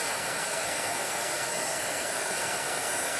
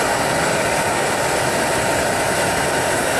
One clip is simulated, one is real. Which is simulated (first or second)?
first